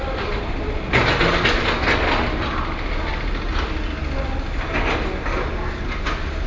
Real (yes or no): yes